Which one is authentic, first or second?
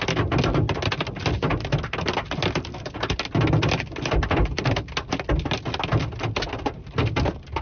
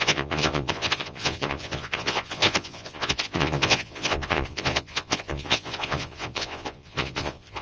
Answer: first